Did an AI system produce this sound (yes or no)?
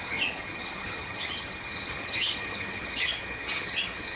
yes